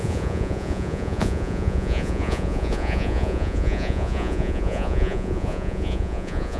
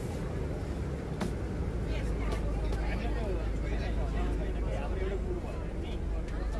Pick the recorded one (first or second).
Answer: second